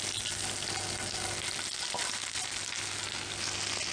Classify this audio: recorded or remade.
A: recorded